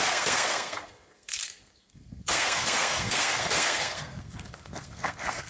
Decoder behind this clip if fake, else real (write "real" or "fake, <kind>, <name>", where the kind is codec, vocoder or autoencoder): fake, codec, SNAC